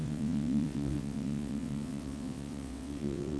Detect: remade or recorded remade